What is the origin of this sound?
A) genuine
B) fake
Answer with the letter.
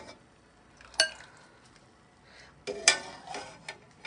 A